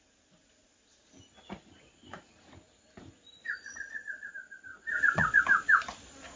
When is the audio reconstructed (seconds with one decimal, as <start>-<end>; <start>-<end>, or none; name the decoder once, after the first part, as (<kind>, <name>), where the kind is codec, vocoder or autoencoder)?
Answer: 3.4-4.3 (vocoder, Vocos); 4.7-5.4